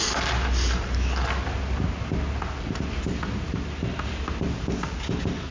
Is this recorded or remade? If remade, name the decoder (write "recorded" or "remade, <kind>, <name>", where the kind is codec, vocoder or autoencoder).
recorded